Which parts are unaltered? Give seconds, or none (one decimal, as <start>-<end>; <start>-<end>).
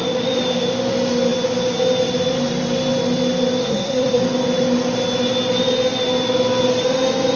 0.0-3.6; 4.2-7.4